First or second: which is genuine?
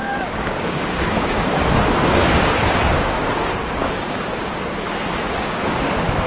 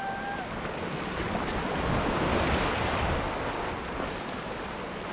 second